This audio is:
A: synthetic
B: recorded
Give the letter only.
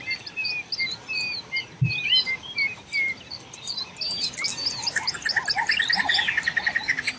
B